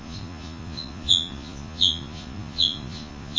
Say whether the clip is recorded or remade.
remade